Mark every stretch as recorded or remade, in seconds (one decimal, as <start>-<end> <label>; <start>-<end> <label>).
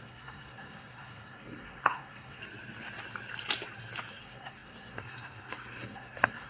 0.0-2.4 remade; 2.4-4.1 recorded; 4.1-6.5 remade